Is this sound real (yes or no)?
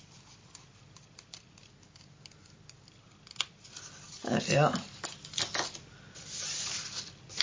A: yes